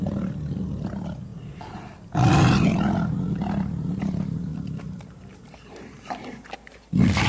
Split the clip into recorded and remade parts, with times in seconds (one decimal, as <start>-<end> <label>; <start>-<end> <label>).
0.0-7.3 recorded